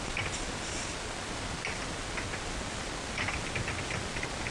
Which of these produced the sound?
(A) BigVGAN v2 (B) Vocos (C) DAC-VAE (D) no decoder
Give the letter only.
D